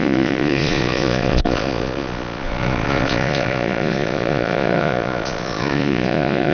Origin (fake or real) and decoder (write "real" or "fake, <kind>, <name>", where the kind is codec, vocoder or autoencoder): fake, vocoder, Vocos